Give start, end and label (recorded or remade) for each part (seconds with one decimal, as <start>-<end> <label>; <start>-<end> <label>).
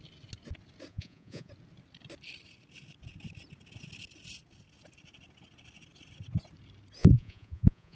0.0-0.9 recorded; 0.9-1.5 remade; 1.5-7.0 recorded; 7.0-8.0 remade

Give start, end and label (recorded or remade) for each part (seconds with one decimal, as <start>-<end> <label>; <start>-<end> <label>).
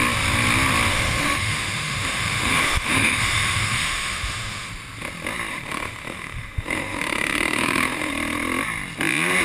0.0-0.9 recorded; 0.9-4.7 remade; 4.7-5.5 recorded; 5.5-8.1 remade; 8.1-9.4 recorded